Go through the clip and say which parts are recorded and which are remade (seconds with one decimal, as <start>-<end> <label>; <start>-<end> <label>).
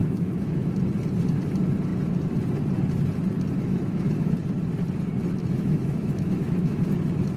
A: 0.0-0.7 remade; 0.7-3.7 recorded; 3.7-4.3 remade; 4.3-5.4 recorded; 5.4-6.9 remade; 6.9-7.4 recorded